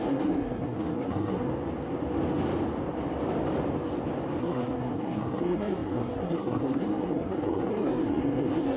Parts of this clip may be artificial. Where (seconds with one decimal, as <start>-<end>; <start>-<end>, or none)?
0.0-1.5; 4.4-8.8